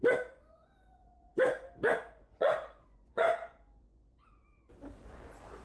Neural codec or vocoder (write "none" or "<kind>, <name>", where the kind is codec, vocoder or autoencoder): vocoder, Vocos